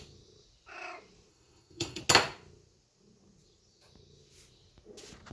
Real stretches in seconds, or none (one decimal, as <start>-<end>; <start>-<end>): 0.0-1.3; 2.0-5.3